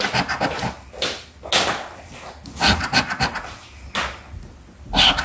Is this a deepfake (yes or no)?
no